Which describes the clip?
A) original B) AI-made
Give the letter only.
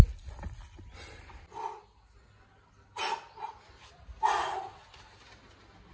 A